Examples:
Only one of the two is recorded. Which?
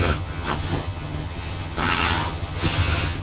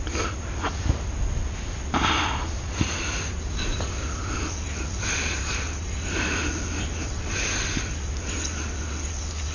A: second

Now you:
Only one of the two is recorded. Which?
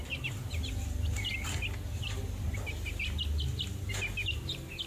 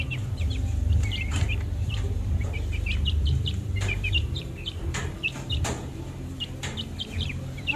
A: first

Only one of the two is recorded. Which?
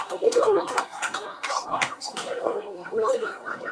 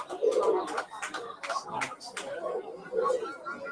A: second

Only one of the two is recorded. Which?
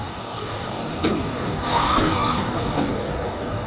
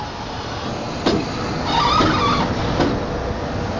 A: second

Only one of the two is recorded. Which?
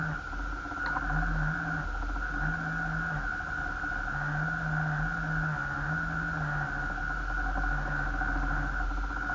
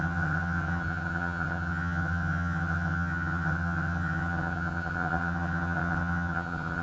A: first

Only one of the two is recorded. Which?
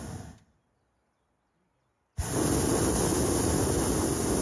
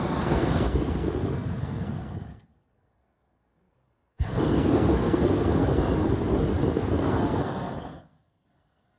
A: first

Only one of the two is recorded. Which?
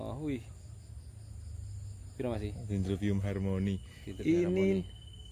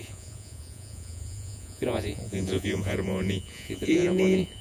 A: first